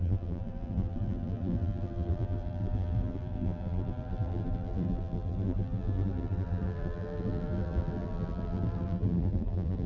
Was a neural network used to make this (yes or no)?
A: yes